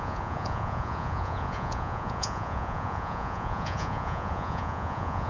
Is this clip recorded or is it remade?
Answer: remade